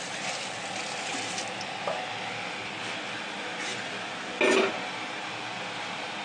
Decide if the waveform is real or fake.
real